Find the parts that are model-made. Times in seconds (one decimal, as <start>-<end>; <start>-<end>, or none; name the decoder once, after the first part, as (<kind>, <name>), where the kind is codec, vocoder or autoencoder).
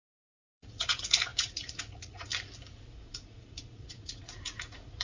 0.0-2.3 (vocoder, Vocos); 3.1-5.0